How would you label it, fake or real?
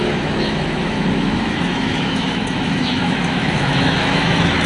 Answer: fake